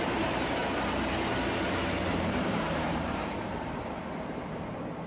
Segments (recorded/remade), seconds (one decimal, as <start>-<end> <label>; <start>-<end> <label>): 0.0-0.6 remade; 0.6-2.1 recorded; 2.1-5.1 remade